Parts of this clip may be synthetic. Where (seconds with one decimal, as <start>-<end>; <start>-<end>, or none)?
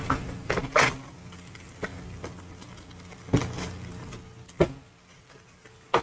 none